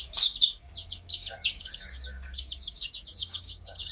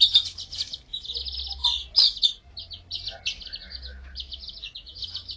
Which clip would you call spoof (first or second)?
first